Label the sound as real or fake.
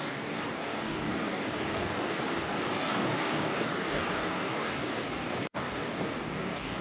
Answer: fake